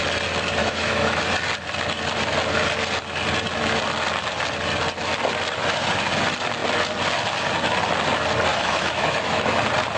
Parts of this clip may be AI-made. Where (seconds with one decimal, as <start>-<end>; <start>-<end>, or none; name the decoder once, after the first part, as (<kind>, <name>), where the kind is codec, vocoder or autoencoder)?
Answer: 0.6-1.2 (autoencoder, DAC-VAE); 8.5-9.6